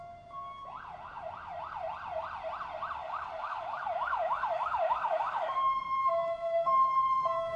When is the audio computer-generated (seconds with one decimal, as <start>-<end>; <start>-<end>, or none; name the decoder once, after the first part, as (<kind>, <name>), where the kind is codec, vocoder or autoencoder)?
3.0-7.6 (codec, DAC)